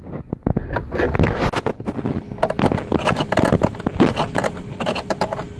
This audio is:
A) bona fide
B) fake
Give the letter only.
A